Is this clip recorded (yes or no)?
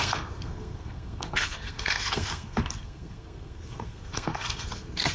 no